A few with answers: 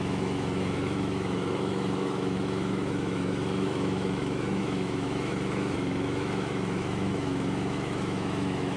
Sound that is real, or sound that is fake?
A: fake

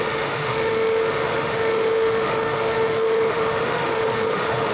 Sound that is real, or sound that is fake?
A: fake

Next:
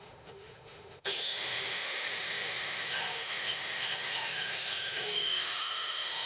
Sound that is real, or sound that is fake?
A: fake